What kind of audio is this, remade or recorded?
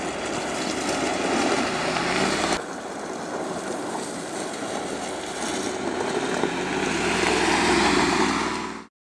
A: recorded